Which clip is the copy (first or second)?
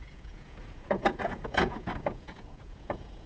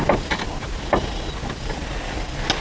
first